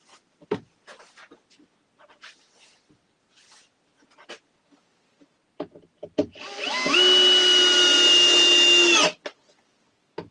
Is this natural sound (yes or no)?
yes